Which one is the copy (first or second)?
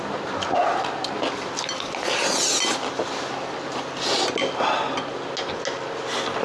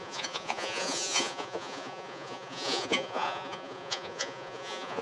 second